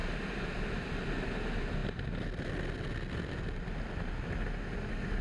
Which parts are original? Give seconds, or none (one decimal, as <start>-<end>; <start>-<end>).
1.3-5.2